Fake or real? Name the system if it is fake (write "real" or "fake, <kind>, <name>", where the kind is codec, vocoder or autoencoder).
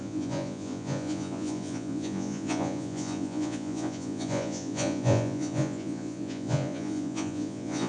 fake, vocoder, Vocos